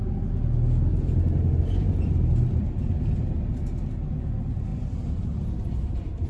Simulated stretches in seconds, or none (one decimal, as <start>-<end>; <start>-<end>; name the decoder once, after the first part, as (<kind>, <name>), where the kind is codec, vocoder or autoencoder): 0.9-2.9 (vocoder, BigVGAN v2); 4.7-6.3